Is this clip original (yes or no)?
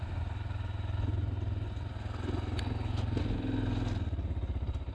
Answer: yes